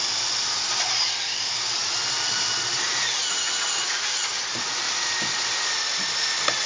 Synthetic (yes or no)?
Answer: yes